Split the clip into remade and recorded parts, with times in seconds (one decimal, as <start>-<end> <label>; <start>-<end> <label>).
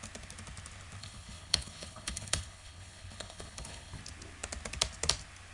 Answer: 0.0-1.0 recorded; 1.0-4.0 remade; 4.0-5.5 recorded